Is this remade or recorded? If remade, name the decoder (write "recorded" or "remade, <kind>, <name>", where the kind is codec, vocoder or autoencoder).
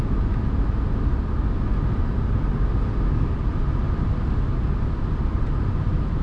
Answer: recorded